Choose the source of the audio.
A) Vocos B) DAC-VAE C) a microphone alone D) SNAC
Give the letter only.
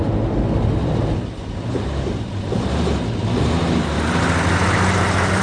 C